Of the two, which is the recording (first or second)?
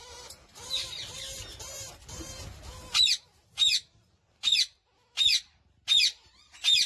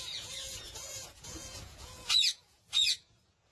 first